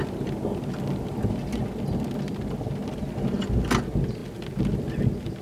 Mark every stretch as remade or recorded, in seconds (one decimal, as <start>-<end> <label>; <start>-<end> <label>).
0.0-5.4 recorded